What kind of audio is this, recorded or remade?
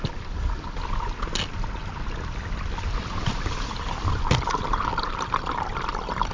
recorded